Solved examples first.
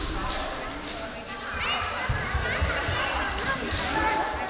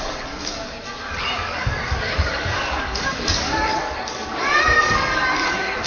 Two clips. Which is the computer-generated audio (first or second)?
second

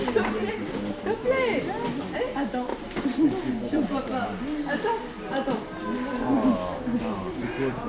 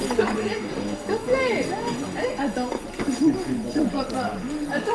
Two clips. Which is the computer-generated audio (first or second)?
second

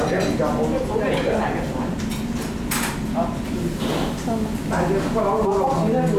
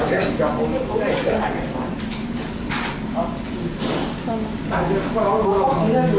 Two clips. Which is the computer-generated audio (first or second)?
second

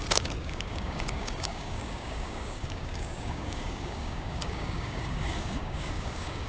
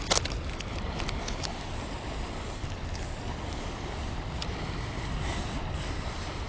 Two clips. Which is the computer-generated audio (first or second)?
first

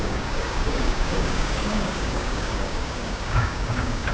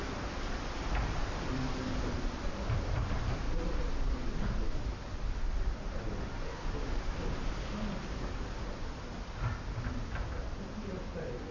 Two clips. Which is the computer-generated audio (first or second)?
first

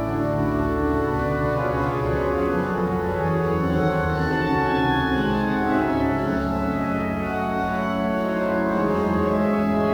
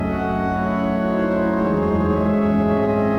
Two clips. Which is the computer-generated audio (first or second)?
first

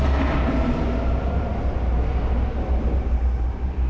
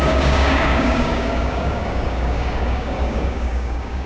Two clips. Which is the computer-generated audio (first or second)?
second